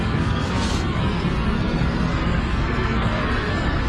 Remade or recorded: remade